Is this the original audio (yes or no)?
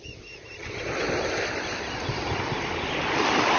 yes